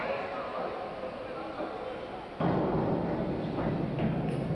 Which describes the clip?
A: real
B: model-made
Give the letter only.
A